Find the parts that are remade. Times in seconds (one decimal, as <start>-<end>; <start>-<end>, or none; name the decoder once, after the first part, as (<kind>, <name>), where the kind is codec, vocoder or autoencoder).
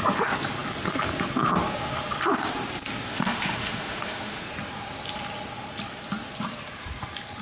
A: 3.1-4.4 (autoencoder, DAC-VAE)